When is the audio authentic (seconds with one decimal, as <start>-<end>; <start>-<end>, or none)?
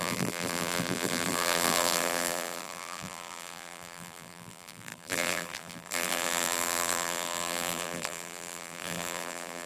none